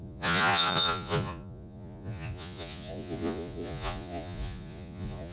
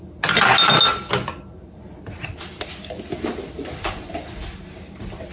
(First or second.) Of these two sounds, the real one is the second